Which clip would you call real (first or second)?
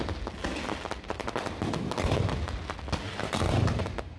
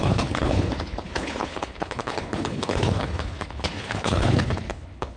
first